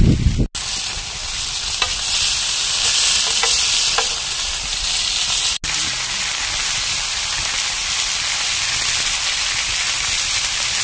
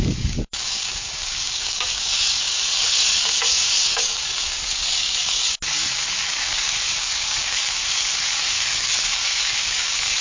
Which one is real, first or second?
first